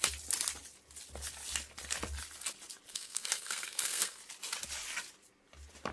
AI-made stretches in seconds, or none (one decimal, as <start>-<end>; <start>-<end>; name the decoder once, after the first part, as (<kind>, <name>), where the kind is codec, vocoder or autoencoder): 2.9-4.2 (codec, SNAC)